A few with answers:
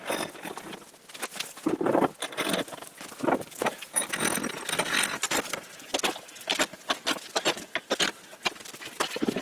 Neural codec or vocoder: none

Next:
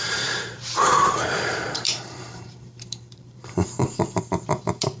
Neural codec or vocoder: vocoder, BigVGAN v2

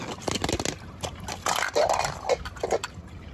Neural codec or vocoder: none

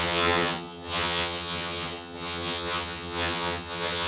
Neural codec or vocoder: vocoder, HiFi-GAN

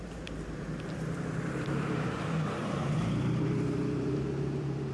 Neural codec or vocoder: vocoder, BigVGAN v2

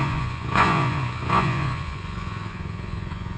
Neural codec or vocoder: vocoder, Vocos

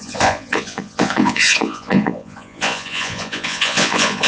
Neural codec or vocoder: vocoder, Vocos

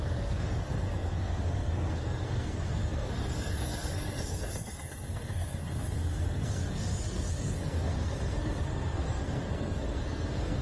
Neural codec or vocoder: codec, SNAC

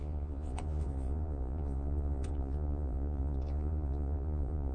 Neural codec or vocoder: vocoder, Vocos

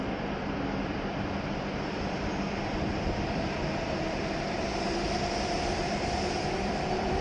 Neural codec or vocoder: vocoder, BigVGAN v2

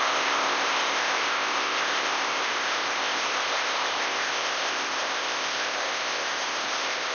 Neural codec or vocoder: codec, ZipCodec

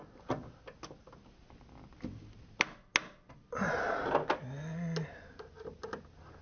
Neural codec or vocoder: none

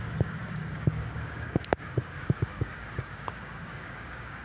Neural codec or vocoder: codec, DAC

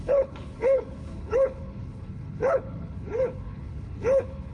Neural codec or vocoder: codec, HILCodec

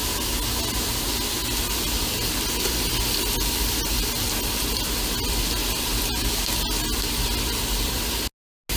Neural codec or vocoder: none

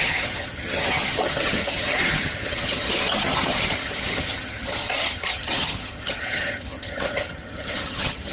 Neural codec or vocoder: vocoder, HiFi-GAN